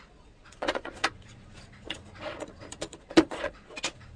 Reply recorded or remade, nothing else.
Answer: remade